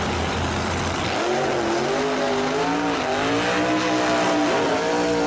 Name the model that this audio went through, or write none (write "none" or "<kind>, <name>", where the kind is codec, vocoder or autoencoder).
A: none